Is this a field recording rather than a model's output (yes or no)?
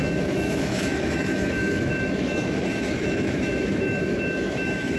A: no